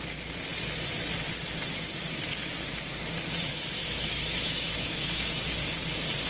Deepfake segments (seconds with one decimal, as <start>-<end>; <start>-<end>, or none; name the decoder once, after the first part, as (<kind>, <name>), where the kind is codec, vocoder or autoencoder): 3.8-5.5 (autoencoder, DAC-VAE)

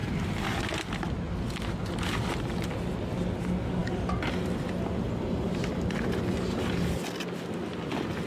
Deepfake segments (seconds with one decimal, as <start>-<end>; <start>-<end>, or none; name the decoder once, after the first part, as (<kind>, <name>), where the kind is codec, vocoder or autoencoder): 0.0-0.8 (vocoder, BigVGAN v2)